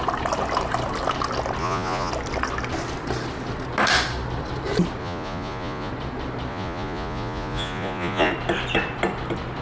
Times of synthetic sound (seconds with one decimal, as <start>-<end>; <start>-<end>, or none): 1.6-2.1; 5.0-5.9; 6.5-8.3